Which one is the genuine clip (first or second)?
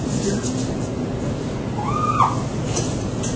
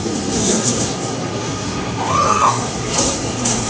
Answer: first